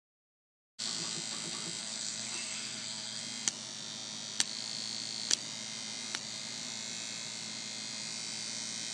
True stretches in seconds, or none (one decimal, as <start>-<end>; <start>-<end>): 0.0-1.8; 3.2-8.9